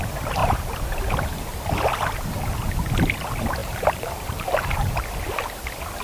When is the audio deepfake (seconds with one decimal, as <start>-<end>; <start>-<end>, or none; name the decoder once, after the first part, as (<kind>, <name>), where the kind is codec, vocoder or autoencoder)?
0.4-1.1 (vocoder, BigVGAN v2); 3.6-4.9